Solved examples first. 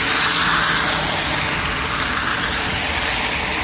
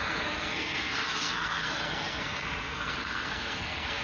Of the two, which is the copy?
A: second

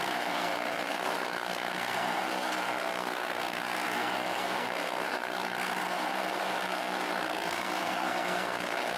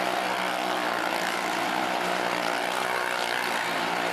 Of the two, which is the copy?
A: first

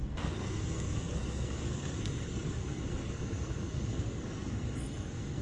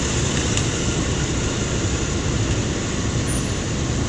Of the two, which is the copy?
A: first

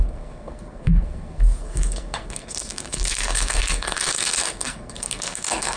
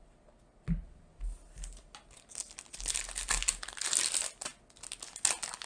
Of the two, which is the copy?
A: first